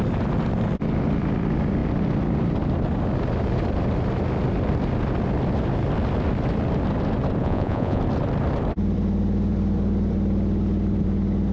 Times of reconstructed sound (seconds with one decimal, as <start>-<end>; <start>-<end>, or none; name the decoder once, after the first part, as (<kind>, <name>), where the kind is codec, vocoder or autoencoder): 7.4-8.0 (vocoder, Vocos)